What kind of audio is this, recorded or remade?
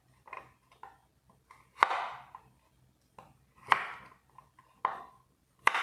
recorded